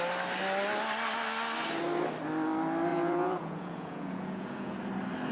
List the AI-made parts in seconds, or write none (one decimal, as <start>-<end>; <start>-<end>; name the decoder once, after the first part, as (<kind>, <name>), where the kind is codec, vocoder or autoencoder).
2.9-4.8 (vocoder, Vocos)